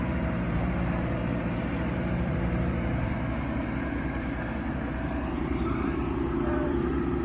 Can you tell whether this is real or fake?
fake